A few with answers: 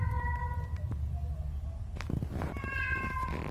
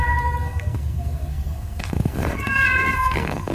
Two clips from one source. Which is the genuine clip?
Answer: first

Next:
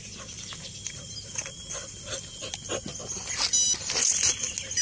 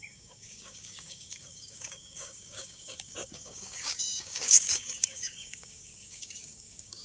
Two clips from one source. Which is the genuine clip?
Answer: first